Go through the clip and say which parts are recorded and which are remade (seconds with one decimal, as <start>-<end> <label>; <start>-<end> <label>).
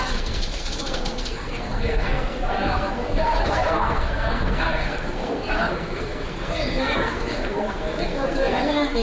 0.0-9.0 remade